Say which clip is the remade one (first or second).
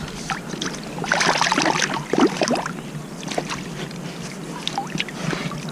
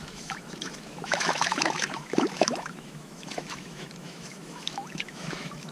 second